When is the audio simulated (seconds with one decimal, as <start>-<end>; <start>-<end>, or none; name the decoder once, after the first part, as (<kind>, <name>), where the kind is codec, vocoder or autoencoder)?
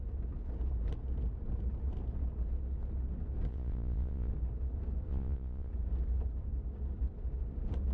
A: 3.5-4.3 (vocoder, Vocos); 5.1-5.7